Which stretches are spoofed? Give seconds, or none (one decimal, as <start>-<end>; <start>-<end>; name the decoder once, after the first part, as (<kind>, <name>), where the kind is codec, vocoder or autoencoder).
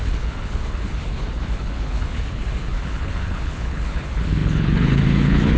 0.0-5.6 (codec, HILCodec)